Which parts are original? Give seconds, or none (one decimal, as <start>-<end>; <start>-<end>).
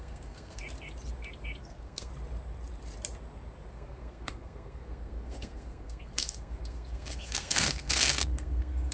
0.6-1.6; 2.1-3.7